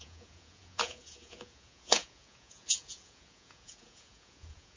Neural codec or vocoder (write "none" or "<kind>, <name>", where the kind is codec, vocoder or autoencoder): vocoder, Vocos